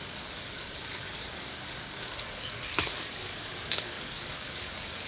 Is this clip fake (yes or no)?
yes